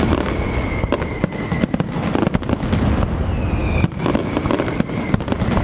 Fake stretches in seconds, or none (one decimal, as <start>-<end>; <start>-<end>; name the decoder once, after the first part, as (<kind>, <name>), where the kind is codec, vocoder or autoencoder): none